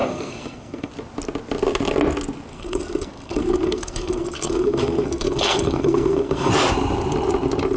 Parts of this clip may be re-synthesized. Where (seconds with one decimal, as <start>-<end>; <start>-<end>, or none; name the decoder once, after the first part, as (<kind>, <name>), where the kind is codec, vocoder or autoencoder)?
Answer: 0.0-0.9 (codec, SNAC); 2.5-6.5